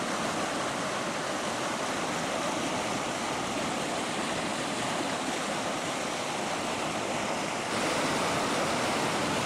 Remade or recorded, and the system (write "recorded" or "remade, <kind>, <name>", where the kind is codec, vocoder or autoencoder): remade, vocoder, BigVGAN v2